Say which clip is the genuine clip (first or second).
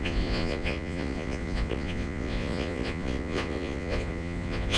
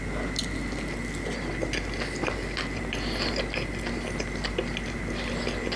second